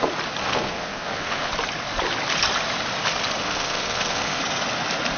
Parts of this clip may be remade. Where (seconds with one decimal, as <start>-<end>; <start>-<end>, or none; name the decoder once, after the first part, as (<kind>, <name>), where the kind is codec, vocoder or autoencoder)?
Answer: 0.4-1.5 (codec, SNAC); 3.4-4.4